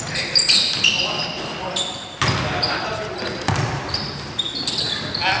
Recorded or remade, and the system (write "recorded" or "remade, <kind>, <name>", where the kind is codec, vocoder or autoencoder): recorded